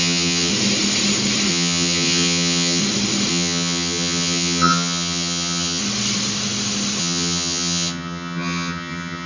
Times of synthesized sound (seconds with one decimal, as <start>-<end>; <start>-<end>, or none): 0.0-0.5; 1.5-2.8; 3.3-5.8; 7.0-9.3